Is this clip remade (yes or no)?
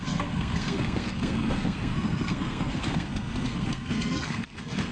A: yes